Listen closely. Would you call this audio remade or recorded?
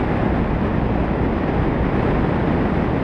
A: recorded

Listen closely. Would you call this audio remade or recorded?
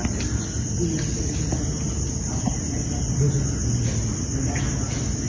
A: recorded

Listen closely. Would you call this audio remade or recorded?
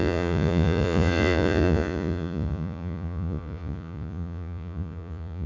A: remade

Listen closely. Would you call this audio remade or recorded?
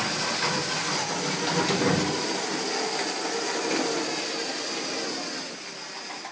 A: recorded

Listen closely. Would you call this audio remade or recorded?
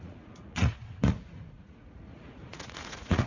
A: remade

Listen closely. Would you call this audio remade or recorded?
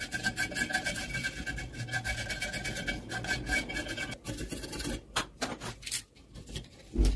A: recorded